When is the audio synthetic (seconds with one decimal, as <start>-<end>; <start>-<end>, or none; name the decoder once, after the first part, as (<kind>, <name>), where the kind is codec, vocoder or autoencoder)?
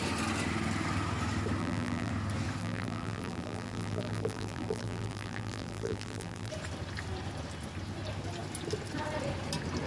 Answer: 1.6-2.1 (vocoder, BigVGAN v2); 2.6-6.5